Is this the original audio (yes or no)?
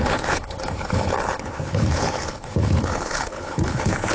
no